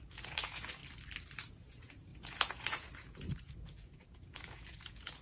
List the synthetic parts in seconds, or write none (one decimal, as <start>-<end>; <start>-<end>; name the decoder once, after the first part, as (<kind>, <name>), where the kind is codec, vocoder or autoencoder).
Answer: 0.0-0.8 (vocoder, Vocos); 1.5-5.2